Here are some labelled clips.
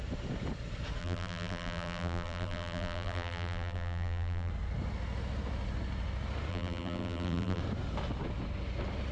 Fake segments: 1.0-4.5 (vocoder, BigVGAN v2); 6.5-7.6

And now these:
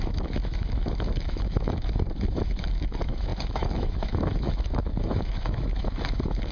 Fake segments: 0.0-6.5 (autoencoder, DAC-VAE)

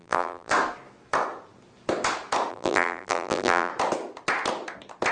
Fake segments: 0.0-0.5 (vocoder, BigVGAN v2); 2.5-3.7